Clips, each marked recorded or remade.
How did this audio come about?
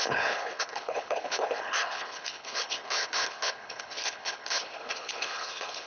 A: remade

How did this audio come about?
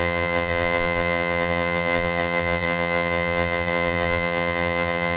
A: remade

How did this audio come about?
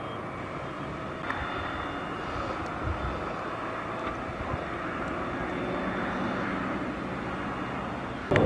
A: recorded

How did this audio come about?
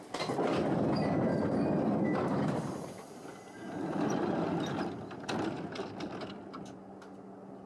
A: recorded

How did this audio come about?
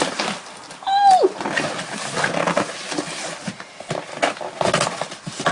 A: recorded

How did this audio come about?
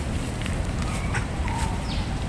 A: remade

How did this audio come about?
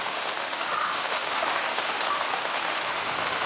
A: remade